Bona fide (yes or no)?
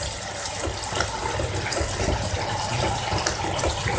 yes